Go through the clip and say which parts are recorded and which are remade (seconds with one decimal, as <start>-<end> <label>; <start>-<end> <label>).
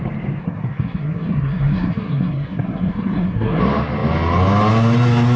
0.0-0.4 recorded; 0.4-3.6 remade; 3.6-5.4 recorded